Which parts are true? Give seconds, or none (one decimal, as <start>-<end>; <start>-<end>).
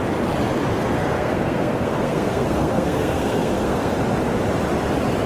0.0-0.7; 3.9-5.3